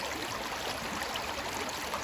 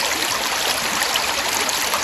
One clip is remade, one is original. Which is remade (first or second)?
second